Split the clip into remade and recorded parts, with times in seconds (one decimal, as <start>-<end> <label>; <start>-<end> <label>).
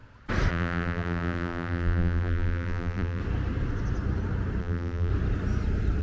0.0-0.5 recorded; 0.5-3.2 remade; 3.2-4.6 recorded; 4.6-5.1 remade; 5.1-6.0 recorded